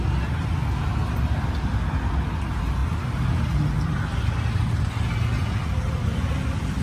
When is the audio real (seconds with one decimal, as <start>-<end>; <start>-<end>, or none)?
0.0-6.8